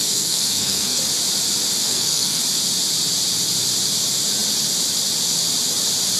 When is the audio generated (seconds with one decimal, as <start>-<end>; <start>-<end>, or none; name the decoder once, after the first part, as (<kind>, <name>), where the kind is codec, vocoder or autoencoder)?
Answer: 0.0-1.0 (codec, SNAC); 1.8-2.4